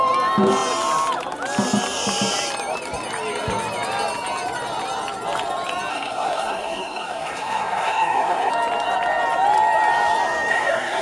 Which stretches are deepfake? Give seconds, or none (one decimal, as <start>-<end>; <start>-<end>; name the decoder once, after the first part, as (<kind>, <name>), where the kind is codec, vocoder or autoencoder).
5.9-8.5 (codec, SNAC); 10.5-11.0